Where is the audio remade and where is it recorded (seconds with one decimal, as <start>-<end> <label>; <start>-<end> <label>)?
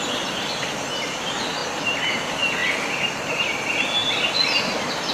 0.0-5.1 recorded